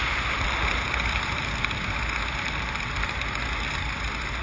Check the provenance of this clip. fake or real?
real